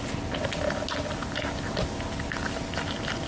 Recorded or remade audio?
recorded